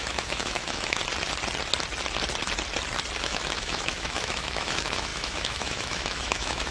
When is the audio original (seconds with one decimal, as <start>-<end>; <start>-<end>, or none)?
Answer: 1.0-3.2